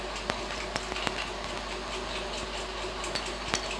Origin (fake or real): real